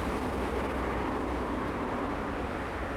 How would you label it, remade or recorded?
recorded